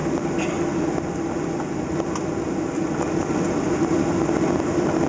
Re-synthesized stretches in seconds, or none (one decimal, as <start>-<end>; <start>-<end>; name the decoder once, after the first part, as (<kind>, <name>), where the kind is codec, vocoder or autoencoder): none